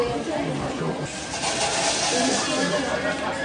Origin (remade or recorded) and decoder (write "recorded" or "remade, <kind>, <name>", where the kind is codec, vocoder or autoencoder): recorded